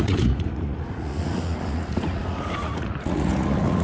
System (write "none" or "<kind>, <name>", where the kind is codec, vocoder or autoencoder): vocoder, Vocos